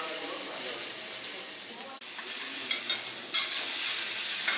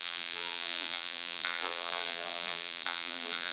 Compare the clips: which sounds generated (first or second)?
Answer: second